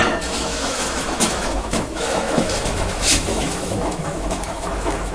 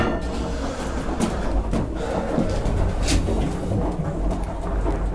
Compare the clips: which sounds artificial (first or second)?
first